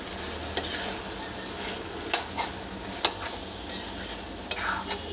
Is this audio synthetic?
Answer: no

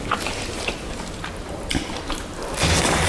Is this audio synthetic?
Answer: yes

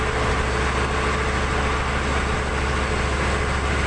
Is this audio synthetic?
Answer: no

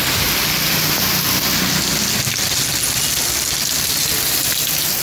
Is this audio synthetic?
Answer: no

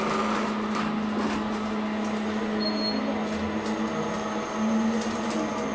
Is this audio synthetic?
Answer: no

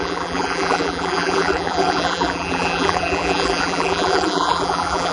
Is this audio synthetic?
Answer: yes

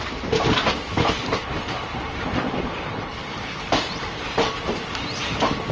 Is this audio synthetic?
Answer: yes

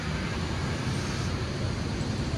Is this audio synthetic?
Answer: yes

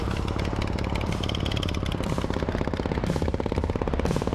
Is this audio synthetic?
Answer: yes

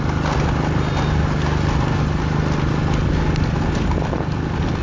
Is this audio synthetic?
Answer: no